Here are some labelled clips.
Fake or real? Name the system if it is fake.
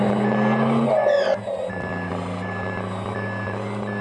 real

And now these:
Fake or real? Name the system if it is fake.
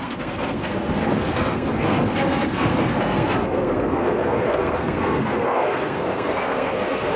fake, codec, SNAC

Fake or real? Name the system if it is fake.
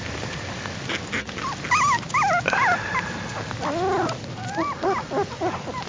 real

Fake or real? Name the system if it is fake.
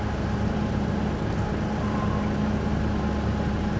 real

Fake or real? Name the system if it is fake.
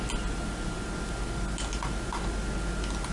real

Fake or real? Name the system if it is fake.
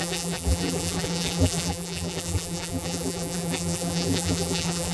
fake, vocoder, BigVGAN v2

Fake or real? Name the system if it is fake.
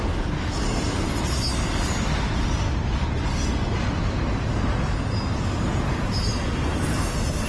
real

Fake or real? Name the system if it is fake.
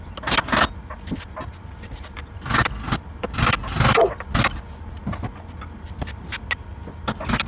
real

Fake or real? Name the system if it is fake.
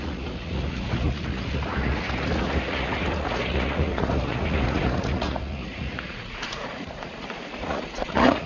fake, vocoder, Vocos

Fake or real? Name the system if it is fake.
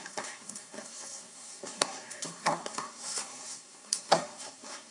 fake, codec, SNAC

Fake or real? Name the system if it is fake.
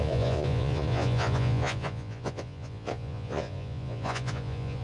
fake, vocoder, Vocos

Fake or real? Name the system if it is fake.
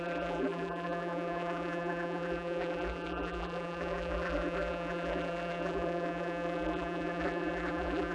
fake, vocoder, BigVGAN v2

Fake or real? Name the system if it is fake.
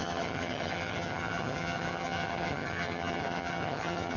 fake, vocoder, HiFi-GAN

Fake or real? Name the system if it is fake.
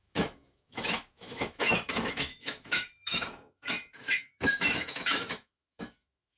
fake, autoencoder, DAC-VAE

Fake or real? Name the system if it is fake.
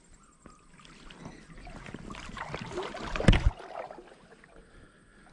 real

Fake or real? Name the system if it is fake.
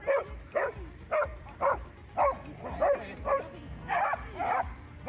fake, vocoder, BigVGAN v2